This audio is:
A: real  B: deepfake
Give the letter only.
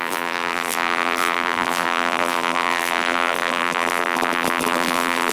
B